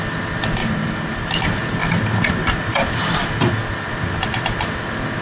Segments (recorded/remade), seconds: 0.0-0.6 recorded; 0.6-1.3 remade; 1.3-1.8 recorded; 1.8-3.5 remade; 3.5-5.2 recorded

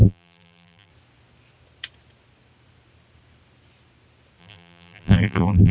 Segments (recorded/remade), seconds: 0.0-0.9 remade; 0.9-4.4 recorded; 4.4-5.7 remade

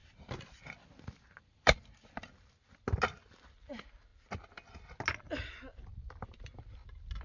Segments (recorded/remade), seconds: 0.0-5.9 recorded; 5.9-6.5 remade; 6.5-7.2 recorded

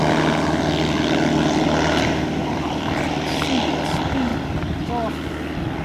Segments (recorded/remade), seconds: 0.0-2.4 recorded; 2.4-3.0 remade; 3.0-4.3 recorded; 4.3-4.9 remade; 4.9-5.8 recorded

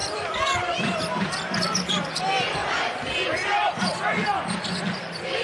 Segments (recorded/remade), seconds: 0.0-2.2 remade; 2.2-5.4 recorded

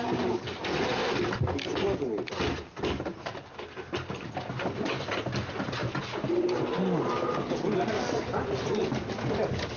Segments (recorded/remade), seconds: 0.0-9.8 recorded

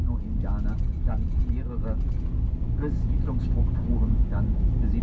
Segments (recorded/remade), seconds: 0.0-5.0 recorded

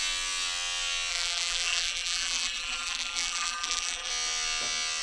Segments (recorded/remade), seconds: 0.0-1.1 recorded; 1.1-4.1 remade; 4.1-5.0 recorded